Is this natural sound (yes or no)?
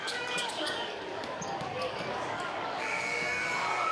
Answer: no